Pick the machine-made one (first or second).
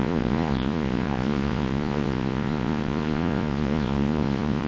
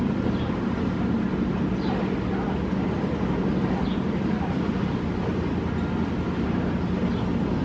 first